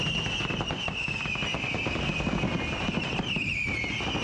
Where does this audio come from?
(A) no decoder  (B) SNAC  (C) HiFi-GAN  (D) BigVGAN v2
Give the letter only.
A